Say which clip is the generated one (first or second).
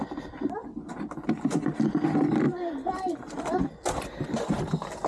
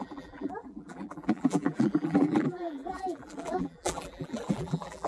second